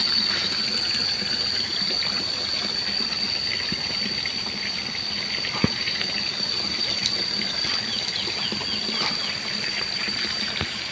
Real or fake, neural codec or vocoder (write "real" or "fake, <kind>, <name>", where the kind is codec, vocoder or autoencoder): real